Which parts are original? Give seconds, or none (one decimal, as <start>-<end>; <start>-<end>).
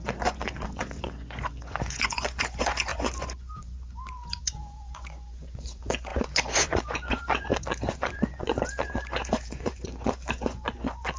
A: none